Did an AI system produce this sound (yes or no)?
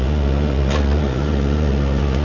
yes